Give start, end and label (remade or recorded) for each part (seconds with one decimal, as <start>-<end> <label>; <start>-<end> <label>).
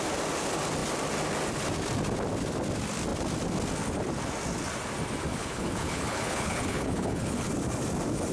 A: 0.0-5.3 recorded; 5.3-7.5 remade; 7.5-8.3 recorded